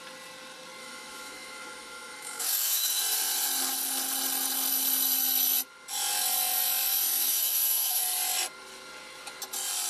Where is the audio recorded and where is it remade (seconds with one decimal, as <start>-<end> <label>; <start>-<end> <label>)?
0.0-0.8 recorded; 0.8-3.0 remade; 3.0-7.3 recorded; 7.3-8.0 remade; 8.0-9.9 recorded